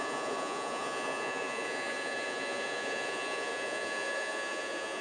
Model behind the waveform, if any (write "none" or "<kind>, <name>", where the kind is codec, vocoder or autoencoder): vocoder, Vocos